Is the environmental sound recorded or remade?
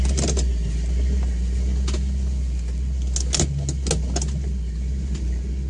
recorded